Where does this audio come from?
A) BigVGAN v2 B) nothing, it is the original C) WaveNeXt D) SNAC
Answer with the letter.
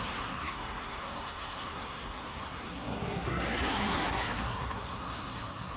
D